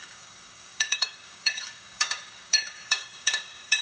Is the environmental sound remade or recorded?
remade